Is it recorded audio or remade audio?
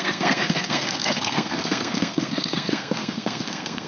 remade